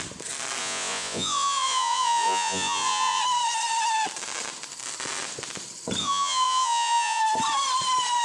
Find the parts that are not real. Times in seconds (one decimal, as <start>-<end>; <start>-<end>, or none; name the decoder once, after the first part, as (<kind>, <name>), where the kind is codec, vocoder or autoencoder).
0.6-3.2 (vocoder, Vocos); 6.0-7.2